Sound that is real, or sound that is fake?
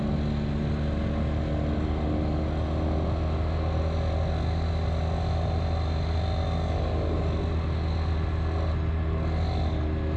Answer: real